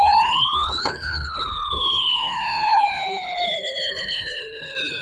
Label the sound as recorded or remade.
remade